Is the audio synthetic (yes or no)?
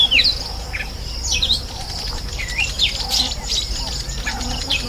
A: yes